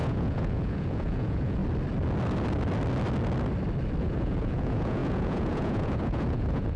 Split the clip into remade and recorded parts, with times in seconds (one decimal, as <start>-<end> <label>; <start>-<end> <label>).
0.0-1.6 remade; 1.6-4.0 recorded; 4.0-6.8 remade